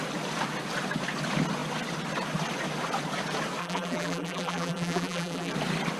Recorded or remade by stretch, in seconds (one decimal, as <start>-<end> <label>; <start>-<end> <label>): 0.0-3.6 recorded; 3.6-5.5 remade; 5.5-6.0 recorded

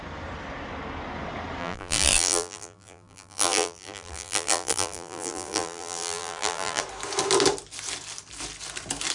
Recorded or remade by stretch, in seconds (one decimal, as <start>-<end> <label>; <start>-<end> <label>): 0.0-1.6 recorded; 1.6-6.8 remade; 6.8-9.1 recorded

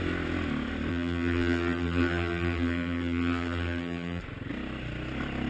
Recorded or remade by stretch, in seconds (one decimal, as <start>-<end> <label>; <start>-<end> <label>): 0.0-0.9 recorded; 0.9-4.2 remade; 4.2-5.5 recorded

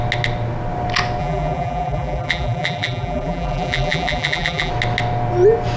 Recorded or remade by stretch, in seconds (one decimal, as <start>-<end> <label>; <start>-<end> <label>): 0.0-1.2 recorded; 1.2-4.7 remade; 4.7-5.8 recorded

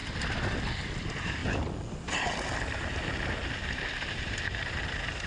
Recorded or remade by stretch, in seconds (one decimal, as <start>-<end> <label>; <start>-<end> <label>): 0.0-0.8 recorded; 0.8-1.4 remade; 1.4-4.1 recorded; 4.1-5.3 remade